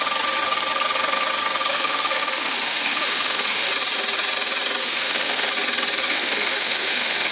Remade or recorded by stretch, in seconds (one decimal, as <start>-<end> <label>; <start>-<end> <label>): 0.0-1.7 recorded; 1.7-3.7 remade; 3.7-4.8 recorded; 4.8-5.5 remade; 5.5-6.1 recorded; 6.1-7.3 remade